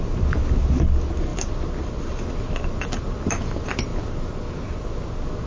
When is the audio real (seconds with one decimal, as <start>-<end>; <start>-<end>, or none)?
0.0-5.5